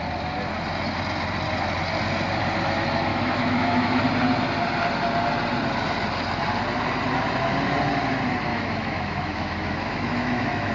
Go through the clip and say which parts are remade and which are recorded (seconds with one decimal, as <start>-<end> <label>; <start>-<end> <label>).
0.0-3.1 recorded; 3.1-4.0 remade; 4.0-8.5 recorded; 8.5-10.7 remade